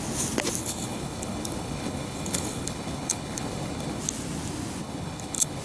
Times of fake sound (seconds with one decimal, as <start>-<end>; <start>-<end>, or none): 0.6-4.0; 4.8-5.6